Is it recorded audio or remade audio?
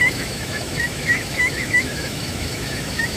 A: remade